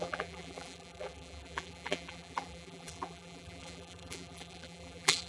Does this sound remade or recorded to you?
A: remade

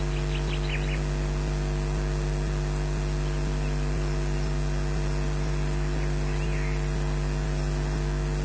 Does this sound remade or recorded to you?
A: recorded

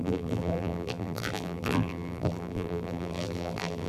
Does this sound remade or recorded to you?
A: remade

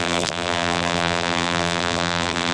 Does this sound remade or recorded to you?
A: remade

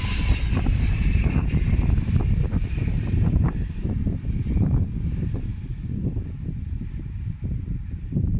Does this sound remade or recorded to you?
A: remade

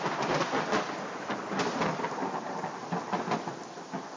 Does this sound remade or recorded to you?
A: recorded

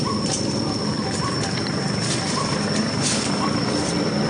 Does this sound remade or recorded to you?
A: remade